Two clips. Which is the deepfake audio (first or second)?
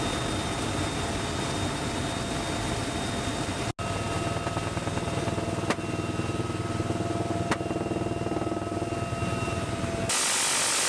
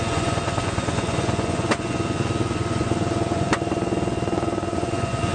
second